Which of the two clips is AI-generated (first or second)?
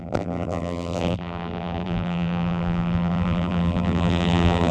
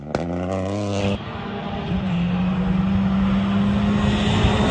first